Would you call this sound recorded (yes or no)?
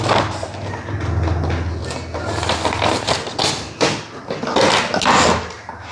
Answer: yes